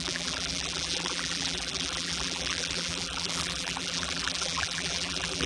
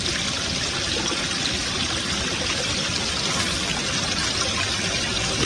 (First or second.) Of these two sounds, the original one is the second